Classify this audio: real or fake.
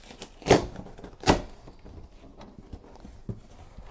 real